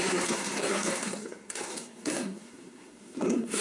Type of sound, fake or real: fake